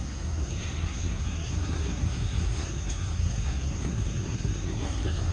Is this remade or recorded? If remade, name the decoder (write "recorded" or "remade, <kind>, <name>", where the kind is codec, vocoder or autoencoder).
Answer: remade, codec, SNAC